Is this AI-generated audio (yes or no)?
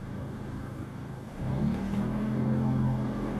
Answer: yes